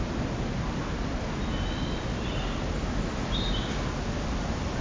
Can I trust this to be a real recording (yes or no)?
yes